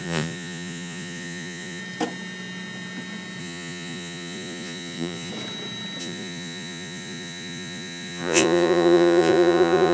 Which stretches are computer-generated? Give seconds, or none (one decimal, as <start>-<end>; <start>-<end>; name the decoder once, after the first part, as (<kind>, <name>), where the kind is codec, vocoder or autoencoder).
0.0-1.8 (vocoder, Vocos); 3.4-5.3; 6.0-9.9